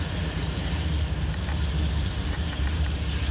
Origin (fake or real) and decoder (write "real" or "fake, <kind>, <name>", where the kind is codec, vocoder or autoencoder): fake, vocoder, BigVGAN v2